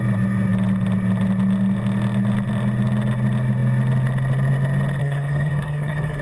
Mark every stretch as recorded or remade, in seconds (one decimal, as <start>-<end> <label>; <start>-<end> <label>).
0.0-5.0 recorded; 5.0-6.2 remade